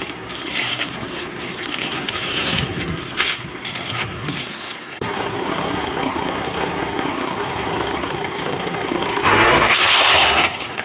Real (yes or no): no